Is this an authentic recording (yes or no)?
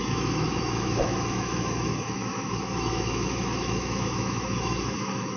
no